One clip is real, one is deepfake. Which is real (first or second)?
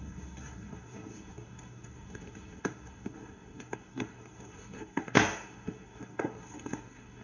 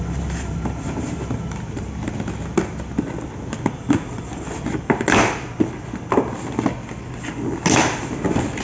second